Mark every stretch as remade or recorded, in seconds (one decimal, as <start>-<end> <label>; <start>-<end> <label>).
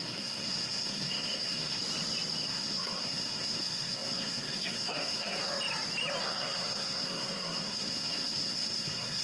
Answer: 0.0-1.8 remade; 1.8-2.5 recorded; 2.5-5.5 remade; 5.5-6.2 recorded; 6.2-9.2 remade